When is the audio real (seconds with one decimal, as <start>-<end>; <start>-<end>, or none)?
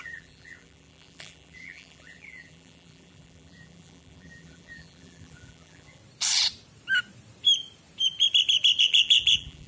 6.0-8.8